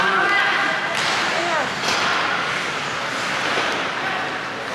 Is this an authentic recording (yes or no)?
yes